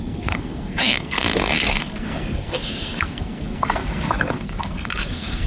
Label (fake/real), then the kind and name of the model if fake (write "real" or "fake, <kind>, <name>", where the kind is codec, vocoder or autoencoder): fake, codec, SNAC